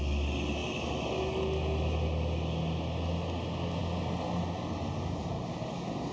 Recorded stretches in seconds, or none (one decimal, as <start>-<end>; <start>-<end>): 0.0-6.1